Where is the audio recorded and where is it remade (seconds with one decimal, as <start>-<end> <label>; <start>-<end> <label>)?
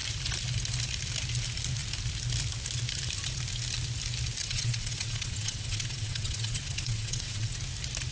0.0-4.4 recorded; 4.4-7.6 remade; 7.6-8.1 recorded